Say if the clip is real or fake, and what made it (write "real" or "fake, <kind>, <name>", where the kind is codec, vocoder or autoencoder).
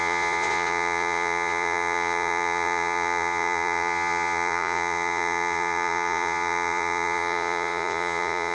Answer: fake, vocoder, Vocos